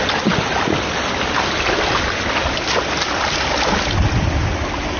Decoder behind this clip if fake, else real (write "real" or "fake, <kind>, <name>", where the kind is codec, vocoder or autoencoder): real